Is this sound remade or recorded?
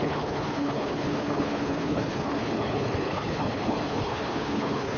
remade